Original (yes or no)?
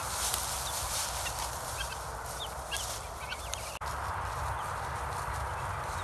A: yes